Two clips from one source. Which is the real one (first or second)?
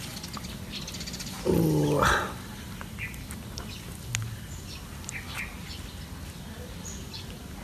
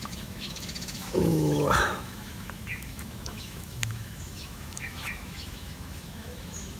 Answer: first